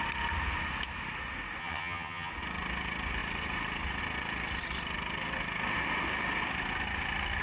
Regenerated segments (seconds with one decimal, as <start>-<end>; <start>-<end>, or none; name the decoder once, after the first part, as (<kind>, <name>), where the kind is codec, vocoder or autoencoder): 1.6-2.3 (vocoder, HiFi-GAN)